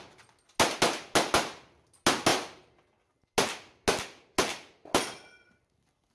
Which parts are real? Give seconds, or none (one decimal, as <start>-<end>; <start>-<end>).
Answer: 0.0-6.1